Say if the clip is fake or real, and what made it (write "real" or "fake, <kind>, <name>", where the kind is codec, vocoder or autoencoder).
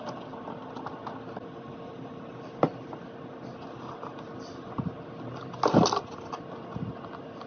real